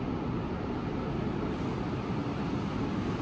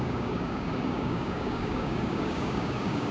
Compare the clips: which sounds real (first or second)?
first